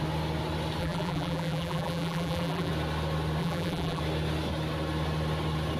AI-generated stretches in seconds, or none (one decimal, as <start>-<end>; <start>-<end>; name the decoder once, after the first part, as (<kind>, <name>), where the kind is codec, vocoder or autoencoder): 0.8-2.7 (vocoder, BigVGAN v2); 3.4-4.0